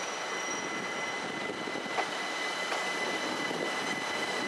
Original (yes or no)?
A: yes